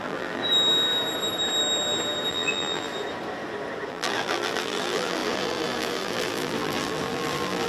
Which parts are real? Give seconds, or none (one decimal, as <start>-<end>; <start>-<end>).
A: 0.4-2.3; 2.9-3.9